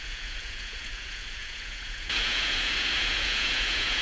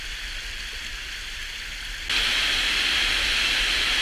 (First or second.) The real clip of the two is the second